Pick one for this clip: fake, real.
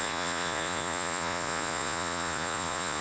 fake